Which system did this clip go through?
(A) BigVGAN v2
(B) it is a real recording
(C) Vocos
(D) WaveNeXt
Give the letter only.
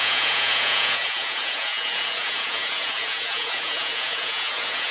C